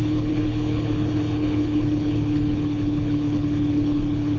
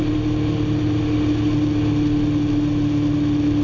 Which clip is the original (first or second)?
second